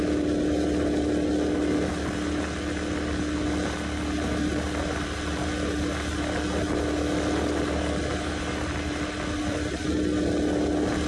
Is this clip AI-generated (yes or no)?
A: no